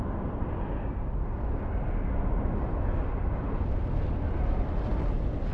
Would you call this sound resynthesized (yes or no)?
no